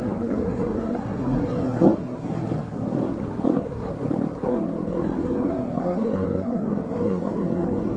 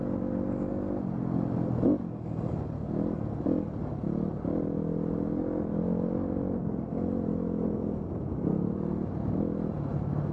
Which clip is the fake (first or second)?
first